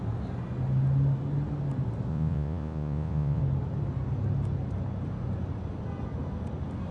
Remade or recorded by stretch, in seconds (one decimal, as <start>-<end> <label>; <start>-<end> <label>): 0.0-2.1 recorded; 2.1-3.4 remade; 3.4-6.9 recorded